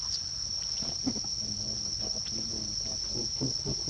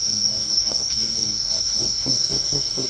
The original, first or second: first